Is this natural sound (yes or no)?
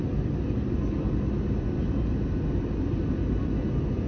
yes